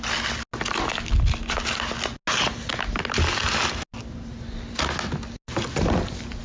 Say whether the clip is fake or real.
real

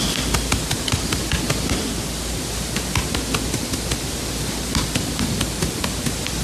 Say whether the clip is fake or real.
real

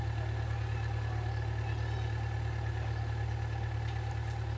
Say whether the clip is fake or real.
real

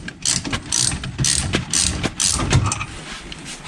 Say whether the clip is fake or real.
real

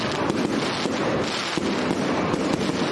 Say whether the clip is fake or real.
real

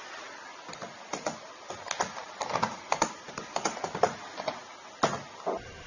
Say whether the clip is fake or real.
real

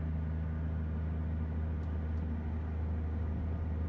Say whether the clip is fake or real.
real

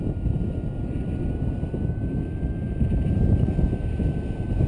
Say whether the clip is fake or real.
real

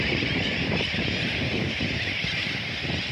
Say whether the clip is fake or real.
fake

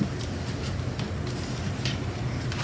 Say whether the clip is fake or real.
real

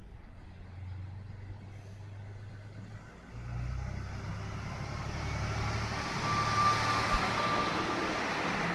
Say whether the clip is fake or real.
real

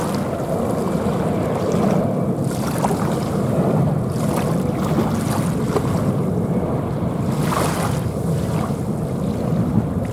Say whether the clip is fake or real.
real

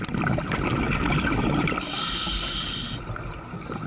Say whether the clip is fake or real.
real